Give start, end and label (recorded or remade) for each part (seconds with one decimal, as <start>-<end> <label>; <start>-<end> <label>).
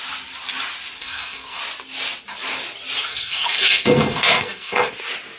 0.0-1.0 recorded; 1.0-1.6 remade; 1.6-3.1 recorded; 3.1-4.9 remade; 4.9-5.4 recorded